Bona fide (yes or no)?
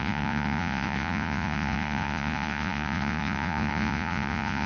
no